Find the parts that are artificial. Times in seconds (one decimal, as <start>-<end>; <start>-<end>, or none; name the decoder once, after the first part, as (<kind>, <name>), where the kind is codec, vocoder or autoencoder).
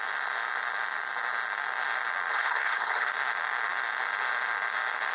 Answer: 2.3-3.1 (codec, HILCodec)